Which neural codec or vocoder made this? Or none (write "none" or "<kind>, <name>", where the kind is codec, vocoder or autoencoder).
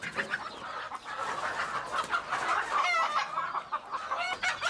none